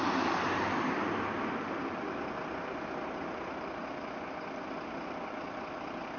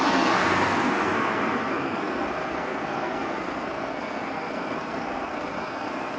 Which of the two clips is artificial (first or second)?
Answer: second